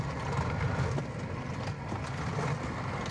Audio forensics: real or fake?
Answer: real